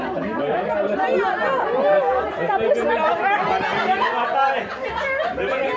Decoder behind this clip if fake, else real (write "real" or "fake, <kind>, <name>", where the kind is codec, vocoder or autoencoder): real